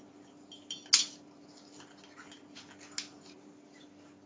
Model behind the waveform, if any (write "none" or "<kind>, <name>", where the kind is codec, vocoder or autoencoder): none